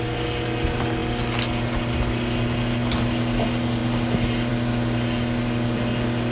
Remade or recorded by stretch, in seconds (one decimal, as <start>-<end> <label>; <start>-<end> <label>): 0.0-6.3 recorded